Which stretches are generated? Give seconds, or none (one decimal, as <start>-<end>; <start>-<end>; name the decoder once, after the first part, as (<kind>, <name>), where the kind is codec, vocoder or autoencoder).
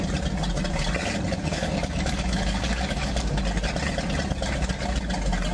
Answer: 1.4-3.4 (codec, DAC)